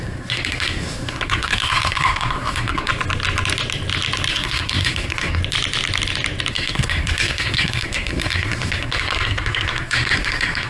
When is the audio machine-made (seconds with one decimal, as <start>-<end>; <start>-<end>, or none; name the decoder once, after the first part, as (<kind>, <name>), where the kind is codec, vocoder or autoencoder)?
0.0-2.9 (codec, SNAC); 4.3-5.4; 6.5-10.7